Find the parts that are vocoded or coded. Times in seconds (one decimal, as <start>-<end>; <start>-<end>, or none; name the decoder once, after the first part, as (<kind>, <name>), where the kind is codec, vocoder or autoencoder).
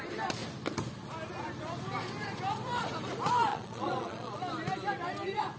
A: 3.5-4.4 (vocoder, Vocos)